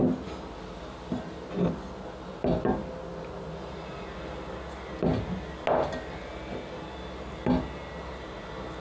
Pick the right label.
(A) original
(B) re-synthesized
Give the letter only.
A